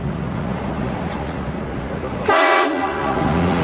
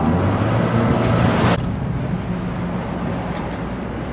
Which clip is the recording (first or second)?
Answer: second